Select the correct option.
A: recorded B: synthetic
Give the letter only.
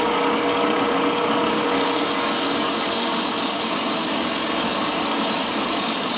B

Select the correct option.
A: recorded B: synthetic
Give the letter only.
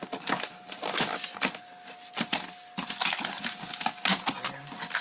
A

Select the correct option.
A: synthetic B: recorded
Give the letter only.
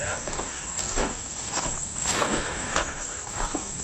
A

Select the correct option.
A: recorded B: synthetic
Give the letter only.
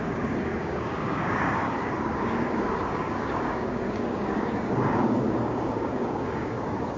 B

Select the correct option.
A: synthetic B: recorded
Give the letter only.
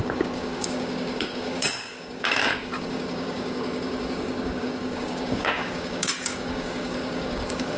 A